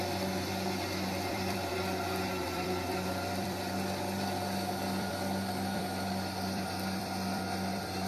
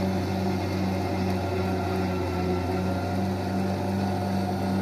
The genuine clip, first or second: second